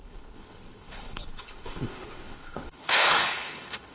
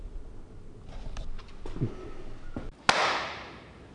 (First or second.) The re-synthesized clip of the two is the first